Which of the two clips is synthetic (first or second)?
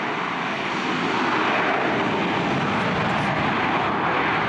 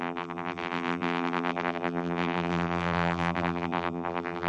second